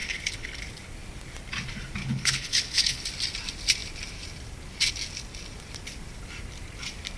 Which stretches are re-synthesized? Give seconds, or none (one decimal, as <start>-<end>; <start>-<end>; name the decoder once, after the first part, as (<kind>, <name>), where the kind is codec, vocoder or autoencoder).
0.0-0.6 (codec, HILCodec); 2.0-3.1